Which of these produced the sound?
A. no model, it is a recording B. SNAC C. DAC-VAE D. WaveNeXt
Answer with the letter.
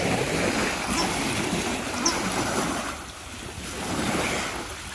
A